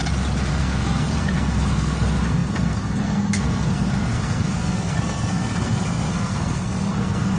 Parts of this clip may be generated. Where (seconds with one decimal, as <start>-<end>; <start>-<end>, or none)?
0.5-7.4